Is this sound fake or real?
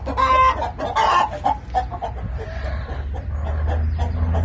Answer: real